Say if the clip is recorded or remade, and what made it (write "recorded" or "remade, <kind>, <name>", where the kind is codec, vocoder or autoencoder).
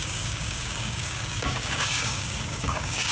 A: remade, codec, DAC